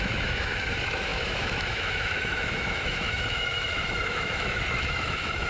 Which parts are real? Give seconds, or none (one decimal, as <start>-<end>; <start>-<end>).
none